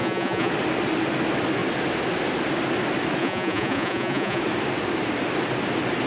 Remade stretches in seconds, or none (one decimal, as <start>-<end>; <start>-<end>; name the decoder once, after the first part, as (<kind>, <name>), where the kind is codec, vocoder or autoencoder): 0.0-0.5 (vocoder, Vocos); 3.2-4.4